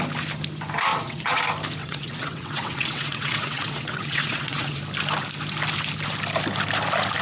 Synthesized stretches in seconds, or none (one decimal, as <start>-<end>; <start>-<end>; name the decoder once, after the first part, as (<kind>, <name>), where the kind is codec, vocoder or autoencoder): 0.9-1.4 (vocoder, WaveNeXt); 1.8-4.8